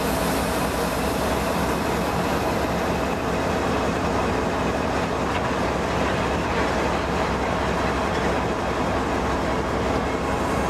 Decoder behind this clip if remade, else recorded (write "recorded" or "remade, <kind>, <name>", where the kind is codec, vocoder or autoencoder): recorded